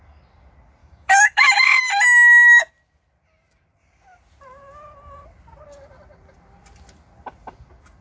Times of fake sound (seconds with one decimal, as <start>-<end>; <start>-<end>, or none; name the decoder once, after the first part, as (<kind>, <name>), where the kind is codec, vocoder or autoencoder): 0.8-1.8 (autoencoder, DAC-VAE)